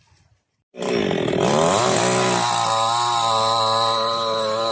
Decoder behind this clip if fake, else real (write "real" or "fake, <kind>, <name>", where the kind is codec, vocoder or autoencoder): real